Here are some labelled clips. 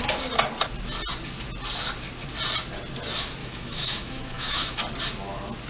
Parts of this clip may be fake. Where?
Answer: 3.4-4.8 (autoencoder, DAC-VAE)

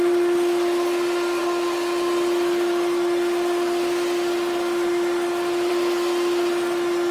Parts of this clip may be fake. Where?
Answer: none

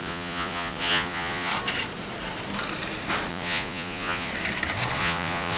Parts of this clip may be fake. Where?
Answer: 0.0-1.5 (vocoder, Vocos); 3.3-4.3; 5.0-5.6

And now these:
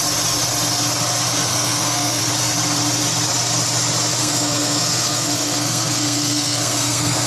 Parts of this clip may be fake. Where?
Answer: 1.5-2.2 (codec, SNAC); 4.2-7.3

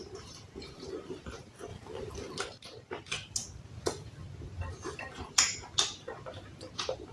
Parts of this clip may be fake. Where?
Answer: 0.0-1.7 (vocoder, BigVGAN v2); 2.4-3.4; 4.7-7.1

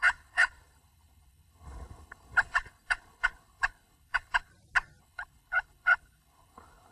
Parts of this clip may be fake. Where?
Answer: 0.0-4.5 (codec, HILCodec); 5.0-6.9

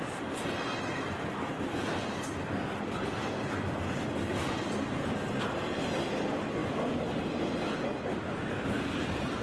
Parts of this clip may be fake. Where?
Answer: none